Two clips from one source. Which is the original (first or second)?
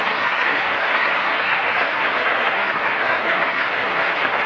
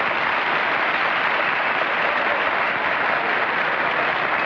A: second